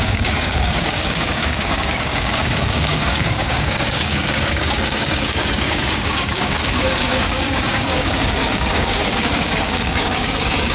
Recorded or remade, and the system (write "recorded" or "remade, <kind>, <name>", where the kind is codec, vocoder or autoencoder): remade, codec, DAC